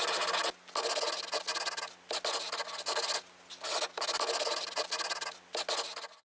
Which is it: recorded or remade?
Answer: recorded